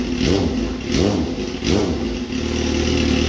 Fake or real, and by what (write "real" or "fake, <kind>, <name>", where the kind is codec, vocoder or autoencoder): real